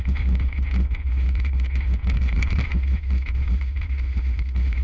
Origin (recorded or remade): remade